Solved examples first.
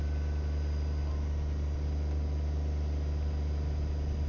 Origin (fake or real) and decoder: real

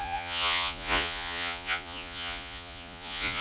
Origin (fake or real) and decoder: fake, vocoder, Vocos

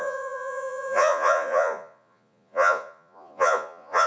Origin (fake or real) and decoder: fake, vocoder, Vocos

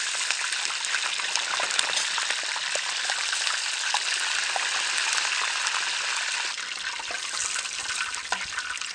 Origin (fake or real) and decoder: real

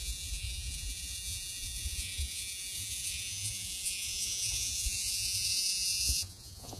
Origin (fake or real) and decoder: fake, vocoder, Vocos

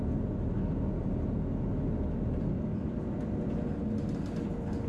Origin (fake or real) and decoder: real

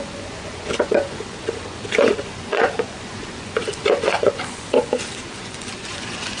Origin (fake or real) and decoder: fake, vocoder, Vocos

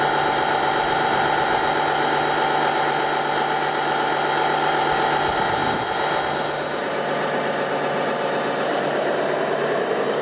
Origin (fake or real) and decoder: real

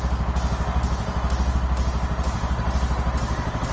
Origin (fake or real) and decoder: real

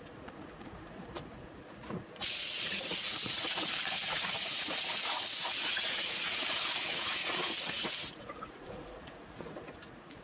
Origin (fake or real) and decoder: fake, vocoder, Vocos